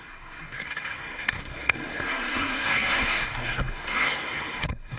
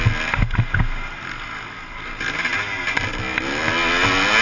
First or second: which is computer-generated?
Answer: first